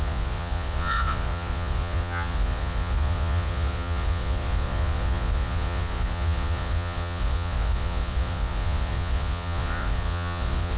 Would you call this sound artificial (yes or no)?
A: yes